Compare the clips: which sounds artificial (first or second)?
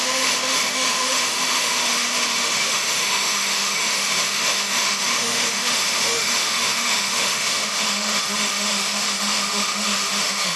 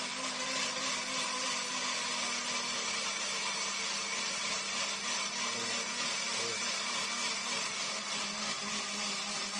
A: first